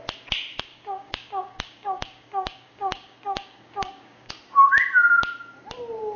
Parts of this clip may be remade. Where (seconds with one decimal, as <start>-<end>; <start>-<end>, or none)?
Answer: 0.7-4.3